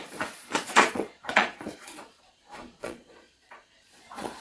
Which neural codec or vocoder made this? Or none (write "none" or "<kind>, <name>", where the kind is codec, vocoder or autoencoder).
vocoder, Vocos